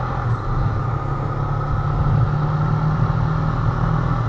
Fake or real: real